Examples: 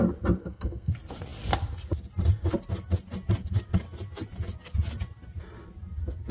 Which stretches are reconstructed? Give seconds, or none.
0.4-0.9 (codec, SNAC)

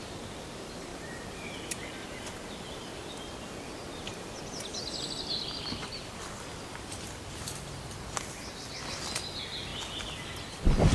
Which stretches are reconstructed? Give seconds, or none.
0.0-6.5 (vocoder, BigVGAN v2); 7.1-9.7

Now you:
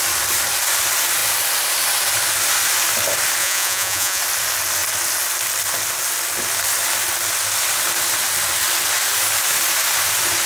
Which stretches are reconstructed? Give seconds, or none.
3.4-4.2 (vocoder, Vocos)

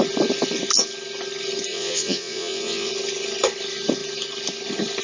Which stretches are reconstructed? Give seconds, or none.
1.7-2.9 (vocoder, Vocos)